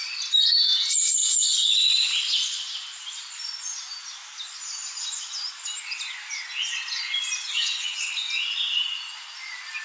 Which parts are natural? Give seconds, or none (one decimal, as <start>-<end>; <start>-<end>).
0.0-7.5; 8.1-9.8

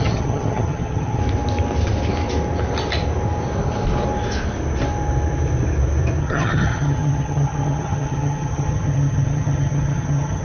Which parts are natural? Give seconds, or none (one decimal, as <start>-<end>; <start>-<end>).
1.2-6.2

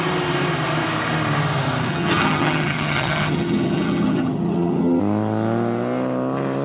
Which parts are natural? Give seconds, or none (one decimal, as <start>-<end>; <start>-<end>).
0.0-1.9; 5.0-6.6

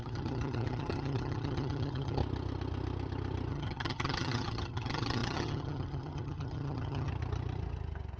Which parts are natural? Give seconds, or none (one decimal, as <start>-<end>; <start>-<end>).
2.2-3.5; 7.1-8.2

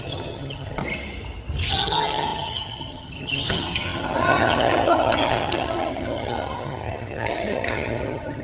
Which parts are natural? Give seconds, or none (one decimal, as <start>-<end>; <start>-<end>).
0.8-1.7

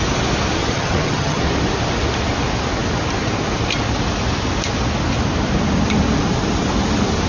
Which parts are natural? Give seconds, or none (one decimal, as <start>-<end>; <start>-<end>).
0.0-0.6; 1.4-7.3

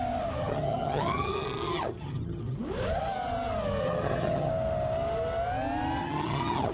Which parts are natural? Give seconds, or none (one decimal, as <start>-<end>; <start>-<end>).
0.0-0.4; 2.4-3.8; 4.5-6.0